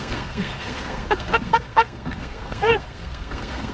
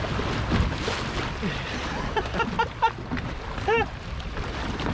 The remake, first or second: first